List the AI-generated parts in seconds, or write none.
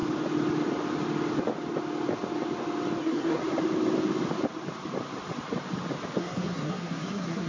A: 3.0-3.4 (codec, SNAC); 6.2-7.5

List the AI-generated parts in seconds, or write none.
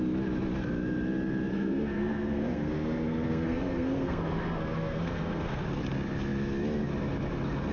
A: 1.5-5.6 (codec, SNAC)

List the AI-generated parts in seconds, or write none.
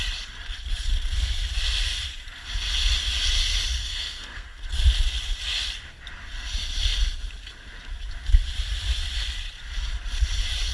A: 3.8-4.7 (codec, SNAC)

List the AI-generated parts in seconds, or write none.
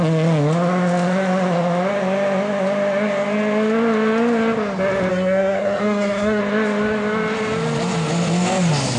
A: 5.1-6.4 (codec, SNAC)